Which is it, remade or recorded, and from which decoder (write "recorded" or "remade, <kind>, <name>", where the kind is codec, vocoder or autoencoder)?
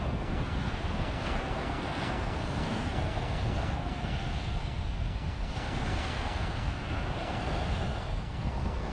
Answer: remade, codec, SNAC